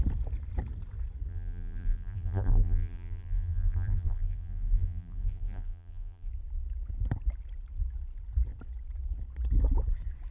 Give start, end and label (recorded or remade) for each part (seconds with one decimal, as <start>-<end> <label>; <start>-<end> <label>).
0.0-1.3 recorded; 1.3-6.3 remade; 6.3-10.3 recorded